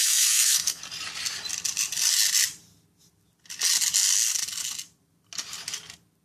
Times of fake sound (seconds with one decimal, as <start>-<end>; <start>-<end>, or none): 0.0-0.8